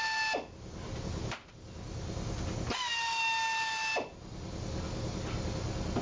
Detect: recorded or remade recorded